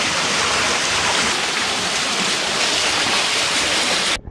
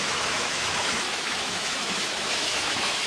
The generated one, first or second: second